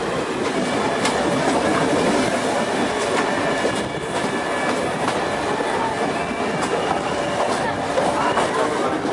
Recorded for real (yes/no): yes